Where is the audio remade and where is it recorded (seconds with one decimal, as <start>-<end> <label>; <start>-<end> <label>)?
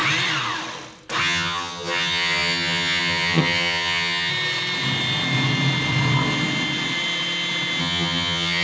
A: 0.0-1.2 recorded; 1.2-4.3 remade; 4.3-7.8 recorded; 7.8-8.6 remade